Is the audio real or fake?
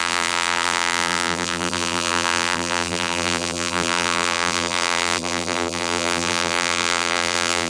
fake